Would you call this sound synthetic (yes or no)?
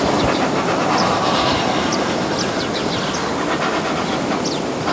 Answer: no